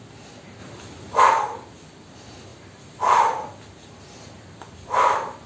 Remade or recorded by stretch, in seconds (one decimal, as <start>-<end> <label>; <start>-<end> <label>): 0.0-0.6 remade; 0.6-1.2 recorded; 1.2-5.5 remade